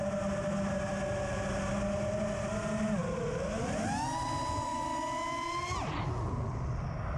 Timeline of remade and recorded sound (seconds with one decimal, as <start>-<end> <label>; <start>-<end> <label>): 0.0-7.2 recorded